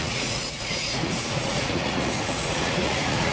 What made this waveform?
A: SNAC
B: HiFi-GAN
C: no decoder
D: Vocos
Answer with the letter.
D